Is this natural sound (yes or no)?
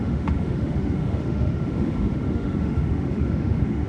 no